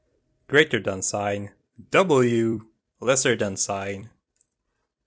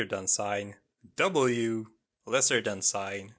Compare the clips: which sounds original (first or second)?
second